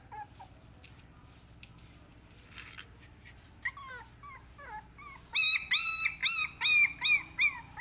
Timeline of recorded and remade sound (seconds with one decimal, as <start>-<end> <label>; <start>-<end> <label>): 0.0-7.8 recorded